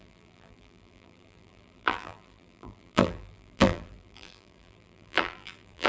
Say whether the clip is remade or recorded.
remade